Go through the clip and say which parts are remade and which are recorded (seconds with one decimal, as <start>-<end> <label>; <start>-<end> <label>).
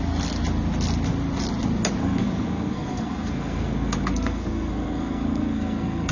0.0-2.0 recorded; 2.0-6.1 remade